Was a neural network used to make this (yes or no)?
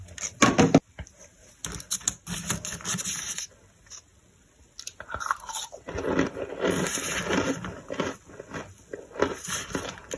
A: no